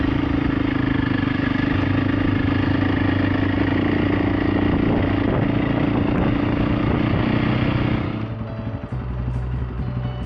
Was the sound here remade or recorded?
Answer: recorded